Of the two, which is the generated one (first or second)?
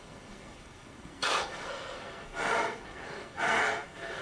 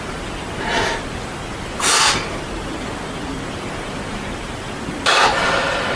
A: first